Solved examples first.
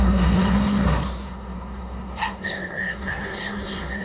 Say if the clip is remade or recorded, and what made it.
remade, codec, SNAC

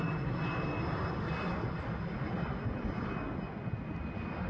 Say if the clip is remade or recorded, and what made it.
recorded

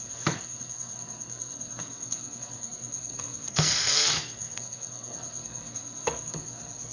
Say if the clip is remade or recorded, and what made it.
remade, codec, SNAC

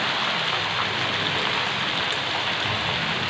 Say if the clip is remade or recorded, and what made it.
recorded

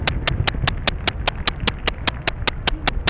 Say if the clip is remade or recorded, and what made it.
recorded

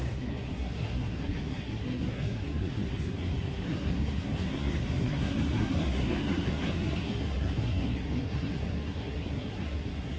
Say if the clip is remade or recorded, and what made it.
remade, codec, SNAC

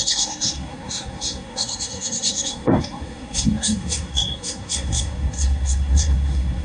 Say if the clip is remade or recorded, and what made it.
remade, codec, SNAC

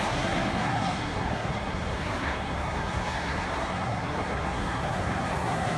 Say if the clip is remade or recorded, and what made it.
remade, codec, SNAC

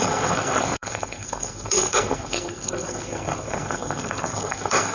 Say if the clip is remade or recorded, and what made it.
remade, codec, SNAC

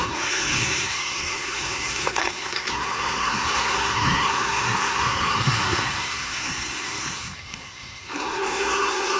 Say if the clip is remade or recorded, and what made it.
remade, codec, SNAC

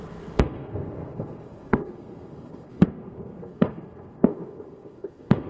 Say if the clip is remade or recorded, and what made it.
remade, codec, SNAC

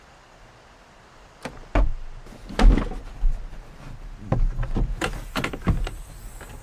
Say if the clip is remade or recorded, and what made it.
recorded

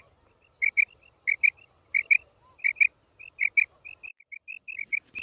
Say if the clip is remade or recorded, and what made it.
recorded